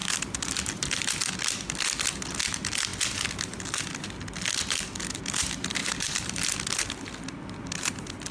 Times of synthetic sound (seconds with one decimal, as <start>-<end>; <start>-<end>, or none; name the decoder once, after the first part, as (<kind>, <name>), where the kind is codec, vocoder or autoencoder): 5.8-6.4 (vocoder, BigVGAN v2)